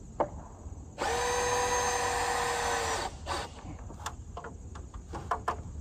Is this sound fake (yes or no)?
no